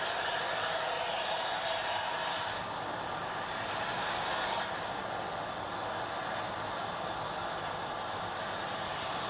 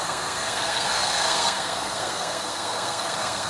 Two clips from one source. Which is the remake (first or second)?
second